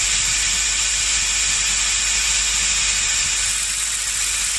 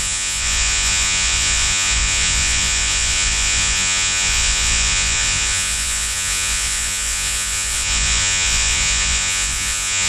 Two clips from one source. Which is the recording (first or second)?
first